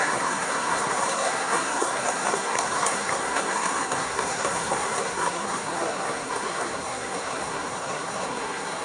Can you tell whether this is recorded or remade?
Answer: remade